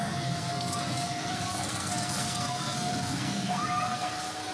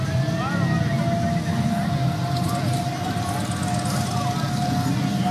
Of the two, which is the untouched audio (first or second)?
second